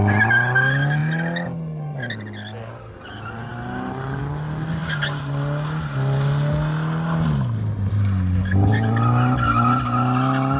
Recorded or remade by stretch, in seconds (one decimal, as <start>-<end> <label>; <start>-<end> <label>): 0.0-10.6 recorded